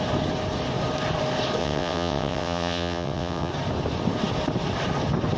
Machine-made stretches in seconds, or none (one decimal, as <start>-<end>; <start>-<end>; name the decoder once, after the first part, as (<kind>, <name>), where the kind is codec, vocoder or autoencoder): 1.6-3.5 (vocoder, WaveNeXt)